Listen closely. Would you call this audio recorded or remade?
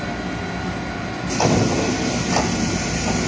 recorded